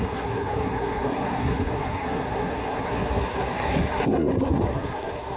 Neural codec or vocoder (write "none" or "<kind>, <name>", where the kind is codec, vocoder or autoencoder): codec, SNAC